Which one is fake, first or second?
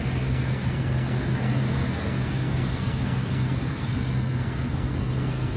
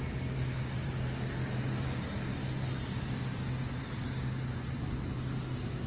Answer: first